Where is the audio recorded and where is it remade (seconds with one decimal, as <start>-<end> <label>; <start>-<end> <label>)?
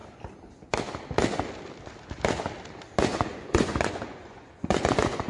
0.0-3.1 recorded; 3.1-5.3 remade